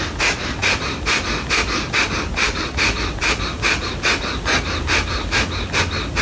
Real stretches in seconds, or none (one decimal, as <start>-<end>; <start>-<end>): 0.0-6.2